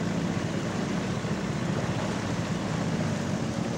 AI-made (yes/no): yes